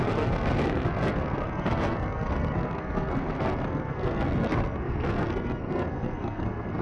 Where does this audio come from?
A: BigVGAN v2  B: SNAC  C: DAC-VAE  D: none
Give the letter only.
B